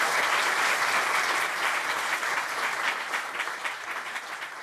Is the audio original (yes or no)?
yes